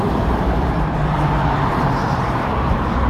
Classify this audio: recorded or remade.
remade